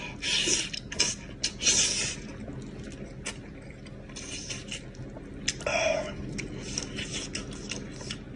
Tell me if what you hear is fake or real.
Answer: real